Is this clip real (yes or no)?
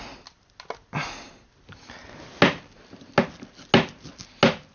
yes